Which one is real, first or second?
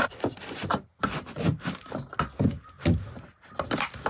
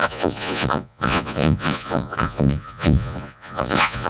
first